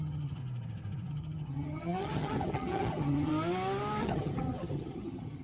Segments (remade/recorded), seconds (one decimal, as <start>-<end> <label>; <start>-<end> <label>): 0.0-0.4 remade; 0.4-1.1 recorded; 1.1-3.3 remade; 3.3-4.0 recorded; 4.0-5.4 remade

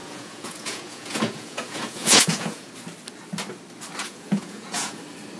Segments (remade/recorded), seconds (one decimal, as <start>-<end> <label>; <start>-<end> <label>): 0.0-2.7 remade; 2.7-4.0 recorded; 4.0-5.0 remade; 5.0-5.4 recorded

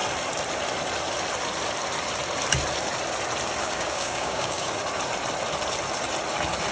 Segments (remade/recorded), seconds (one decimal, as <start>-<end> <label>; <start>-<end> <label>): 0.0-3.6 recorded; 3.6-4.8 remade; 4.8-6.7 recorded

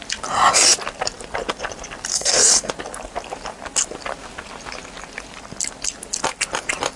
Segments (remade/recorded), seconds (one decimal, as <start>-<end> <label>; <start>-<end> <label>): 0.0-2.1 recorded; 2.1-2.7 remade; 2.7-7.0 recorded

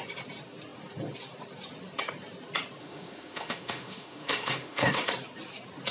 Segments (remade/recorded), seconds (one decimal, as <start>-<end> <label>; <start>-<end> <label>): 0.0-2.8 recorded; 2.8-5.1 remade; 5.1-5.9 recorded

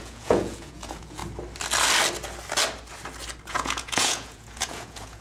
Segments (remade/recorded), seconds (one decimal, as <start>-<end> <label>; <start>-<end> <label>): 0.0-1.2 remade; 1.2-3.5 recorded; 3.5-5.2 remade

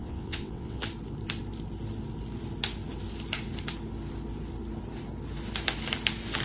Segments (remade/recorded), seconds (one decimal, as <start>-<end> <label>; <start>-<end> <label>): 0.0-0.8 remade; 0.8-6.4 recorded

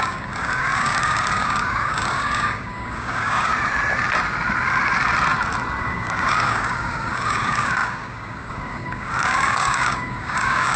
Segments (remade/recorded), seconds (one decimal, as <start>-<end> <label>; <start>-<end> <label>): 0.0-3.5 remade; 3.5-5.8 recorded; 5.8-10.8 remade